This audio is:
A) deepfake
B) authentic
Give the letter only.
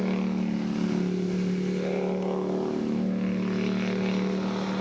B